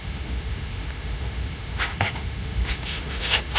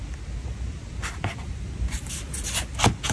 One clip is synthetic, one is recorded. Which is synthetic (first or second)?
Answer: first